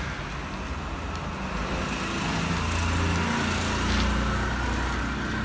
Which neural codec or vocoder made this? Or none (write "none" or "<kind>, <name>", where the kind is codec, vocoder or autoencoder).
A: none